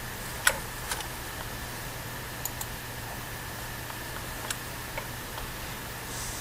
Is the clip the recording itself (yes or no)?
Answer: yes